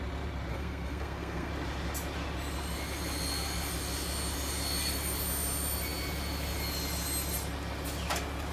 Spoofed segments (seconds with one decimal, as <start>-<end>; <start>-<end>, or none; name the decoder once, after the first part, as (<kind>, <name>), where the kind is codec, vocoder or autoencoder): 0.5-1.5 (codec, SNAC)